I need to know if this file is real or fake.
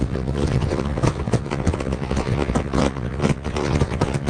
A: fake